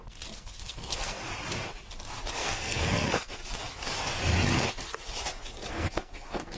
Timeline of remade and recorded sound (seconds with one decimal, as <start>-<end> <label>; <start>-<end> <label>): 0.0-1.2 remade; 1.2-2.3 recorded; 2.3-3.4 remade; 3.4-5.7 recorded; 5.7-6.6 remade

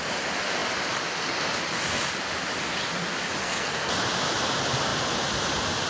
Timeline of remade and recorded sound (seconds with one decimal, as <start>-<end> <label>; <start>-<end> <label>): 0.0-3.4 recorded; 3.4-3.9 remade; 3.9-5.9 recorded